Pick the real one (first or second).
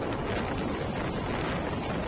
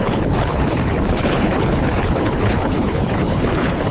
first